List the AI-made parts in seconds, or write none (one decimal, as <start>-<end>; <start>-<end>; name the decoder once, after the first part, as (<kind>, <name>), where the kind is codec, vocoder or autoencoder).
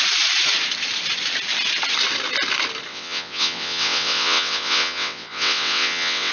2.9-6.3 (vocoder, WaveNeXt)